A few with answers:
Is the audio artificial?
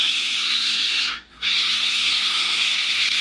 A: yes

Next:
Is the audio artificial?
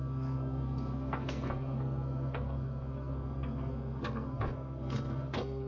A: yes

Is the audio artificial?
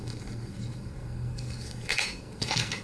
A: yes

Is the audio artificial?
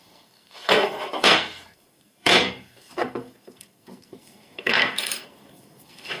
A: yes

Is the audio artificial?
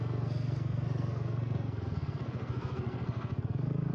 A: yes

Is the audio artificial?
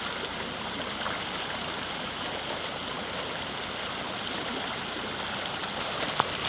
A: no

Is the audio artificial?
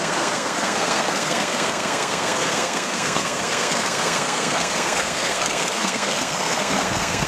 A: yes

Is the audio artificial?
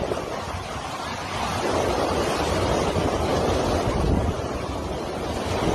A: no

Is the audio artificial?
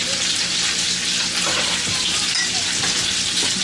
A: no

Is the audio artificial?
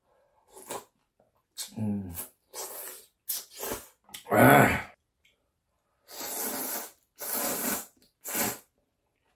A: no